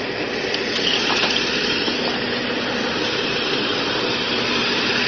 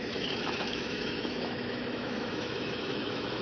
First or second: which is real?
first